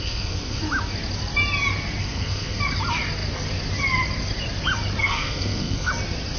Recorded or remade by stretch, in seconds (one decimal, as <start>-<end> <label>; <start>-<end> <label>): 0.0-0.6 remade; 0.6-2.0 recorded; 2.0-2.6 remade; 2.6-5.0 recorded; 5.0-5.9 remade; 5.9-6.4 recorded